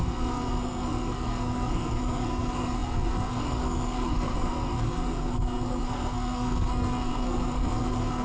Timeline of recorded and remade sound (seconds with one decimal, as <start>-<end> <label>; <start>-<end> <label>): 0.0-8.2 remade